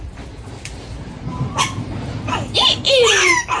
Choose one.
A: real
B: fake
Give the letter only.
B